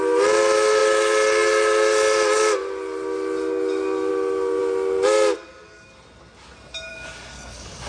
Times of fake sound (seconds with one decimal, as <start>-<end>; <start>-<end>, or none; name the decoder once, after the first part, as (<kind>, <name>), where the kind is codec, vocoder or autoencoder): 6.9-7.9 (codec, DAC)